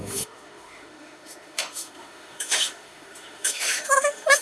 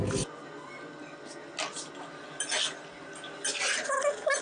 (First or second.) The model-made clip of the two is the first